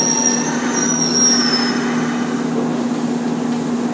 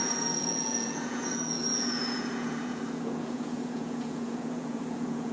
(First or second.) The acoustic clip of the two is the first